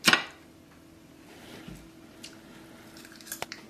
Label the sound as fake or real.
real